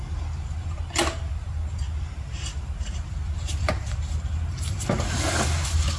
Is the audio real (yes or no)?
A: yes